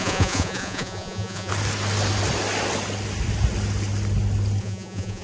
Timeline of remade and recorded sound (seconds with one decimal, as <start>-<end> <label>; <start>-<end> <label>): 0.0-1.5 remade; 1.5-4.6 recorded; 4.6-5.2 remade